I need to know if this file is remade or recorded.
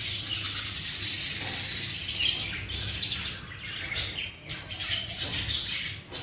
recorded